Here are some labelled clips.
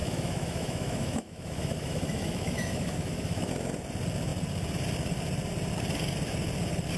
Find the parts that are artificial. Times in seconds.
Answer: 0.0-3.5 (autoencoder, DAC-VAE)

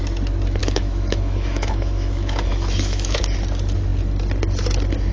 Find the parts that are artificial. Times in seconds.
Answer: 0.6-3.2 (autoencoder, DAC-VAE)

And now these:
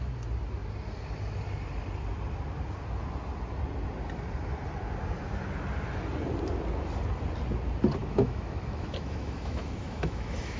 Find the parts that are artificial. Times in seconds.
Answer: 8.0-10.6 (autoencoder, DAC-VAE)